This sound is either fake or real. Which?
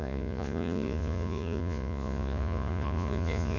fake